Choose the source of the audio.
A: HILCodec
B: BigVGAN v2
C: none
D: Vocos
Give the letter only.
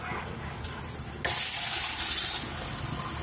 C